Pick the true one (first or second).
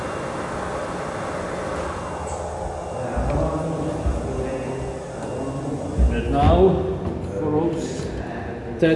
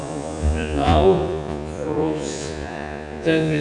first